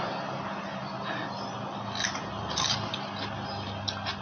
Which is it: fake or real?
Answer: real